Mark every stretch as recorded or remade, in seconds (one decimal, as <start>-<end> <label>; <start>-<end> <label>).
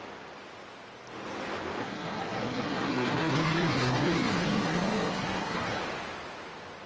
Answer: 0.0-1.8 recorded; 1.8-5.8 remade; 5.8-6.9 recorded